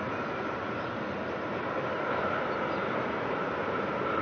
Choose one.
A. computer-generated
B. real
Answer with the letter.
B